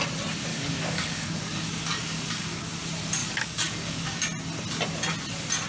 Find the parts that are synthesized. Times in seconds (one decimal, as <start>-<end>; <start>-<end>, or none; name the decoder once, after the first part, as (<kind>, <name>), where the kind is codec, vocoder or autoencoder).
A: 0.5-2.7 (codec, DAC); 3.2-4.2